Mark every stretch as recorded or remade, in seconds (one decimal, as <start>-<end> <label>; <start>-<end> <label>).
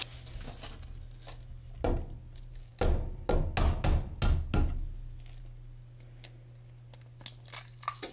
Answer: 0.0-8.1 recorded